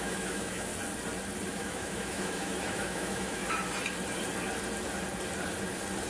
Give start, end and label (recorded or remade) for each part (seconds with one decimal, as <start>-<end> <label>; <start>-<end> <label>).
0.0-0.7 remade; 0.7-1.5 recorded; 1.5-3.4 remade; 3.4-6.1 recorded